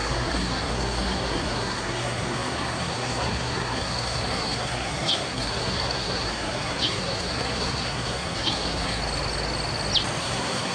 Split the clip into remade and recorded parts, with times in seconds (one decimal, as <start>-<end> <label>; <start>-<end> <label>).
0.0-9.0 remade; 9.0-10.2 recorded; 10.2-10.7 remade

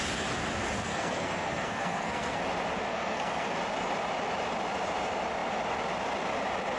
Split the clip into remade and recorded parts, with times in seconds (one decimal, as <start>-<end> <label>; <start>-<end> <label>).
0.0-0.8 recorded; 0.8-2.4 remade; 2.4-2.9 recorded; 2.9-3.6 remade; 3.6-6.8 recorded

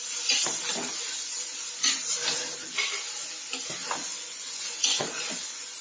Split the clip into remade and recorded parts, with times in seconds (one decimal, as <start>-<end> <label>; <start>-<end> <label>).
0.0-0.9 recorded; 0.9-1.4 remade; 1.4-4.0 recorded; 4.0-5.8 remade

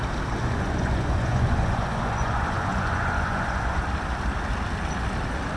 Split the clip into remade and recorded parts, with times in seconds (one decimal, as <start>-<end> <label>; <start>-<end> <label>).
0.0-0.4 recorded; 0.4-3.8 remade; 3.8-5.6 recorded